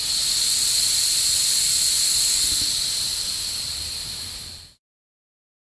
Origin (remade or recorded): recorded